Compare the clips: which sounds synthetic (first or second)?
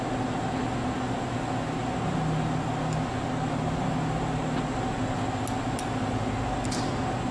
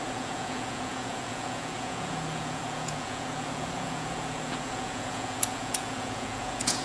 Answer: second